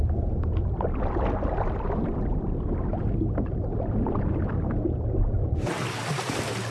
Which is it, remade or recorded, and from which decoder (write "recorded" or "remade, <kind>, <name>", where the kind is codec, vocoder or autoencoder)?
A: recorded